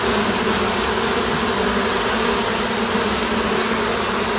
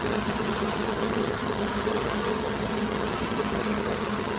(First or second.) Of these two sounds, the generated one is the second